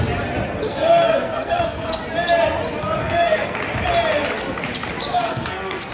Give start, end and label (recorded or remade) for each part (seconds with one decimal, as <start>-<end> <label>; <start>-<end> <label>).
0.0-0.6 recorded; 0.6-2.0 remade; 2.0-3.0 recorded; 3.0-3.6 remade; 3.6-5.1 recorded; 5.1-5.9 remade